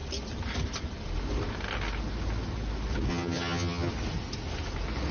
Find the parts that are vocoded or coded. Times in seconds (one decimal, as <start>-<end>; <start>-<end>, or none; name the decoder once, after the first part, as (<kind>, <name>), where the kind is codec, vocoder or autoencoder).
3.1-3.9 (vocoder, HiFi-GAN)